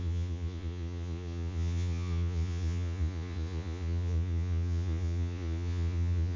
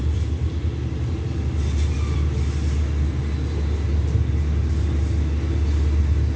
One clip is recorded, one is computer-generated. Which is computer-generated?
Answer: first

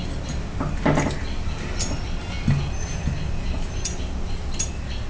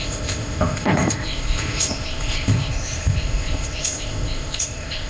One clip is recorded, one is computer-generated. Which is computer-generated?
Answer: second